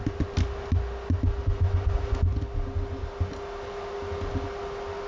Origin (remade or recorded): recorded